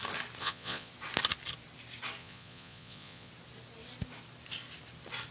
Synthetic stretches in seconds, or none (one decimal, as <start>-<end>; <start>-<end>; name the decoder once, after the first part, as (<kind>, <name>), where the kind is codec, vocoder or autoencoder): 0.4-0.9 (vocoder, Vocos); 2.2-3.3